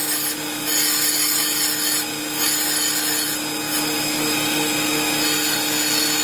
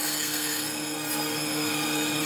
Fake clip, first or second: second